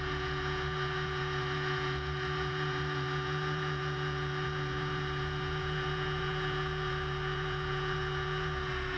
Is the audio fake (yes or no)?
yes